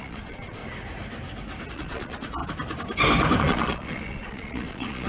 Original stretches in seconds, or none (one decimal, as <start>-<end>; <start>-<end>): 0.6-1.7; 2.4-3.4